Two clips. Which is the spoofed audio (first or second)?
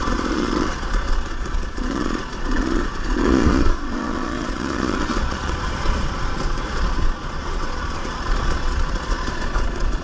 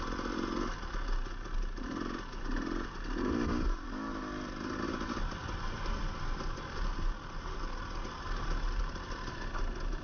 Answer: first